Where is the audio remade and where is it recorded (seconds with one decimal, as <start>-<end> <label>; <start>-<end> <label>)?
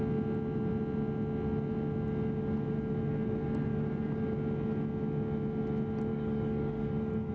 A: 0.0-6.1 recorded; 6.1-7.3 remade